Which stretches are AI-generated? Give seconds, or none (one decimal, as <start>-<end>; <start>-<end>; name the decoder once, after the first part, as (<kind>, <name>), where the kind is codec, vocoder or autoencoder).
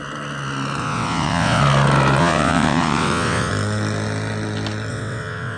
0.8-1.6 (vocoder, WaveNeXt); 2.2-3.5; 4.9-5.6